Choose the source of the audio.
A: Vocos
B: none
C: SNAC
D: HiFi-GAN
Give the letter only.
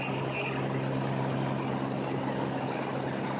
B